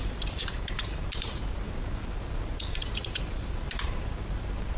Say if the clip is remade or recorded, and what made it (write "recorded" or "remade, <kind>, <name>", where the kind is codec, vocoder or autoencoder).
remade, vocoder, BigVGAN v2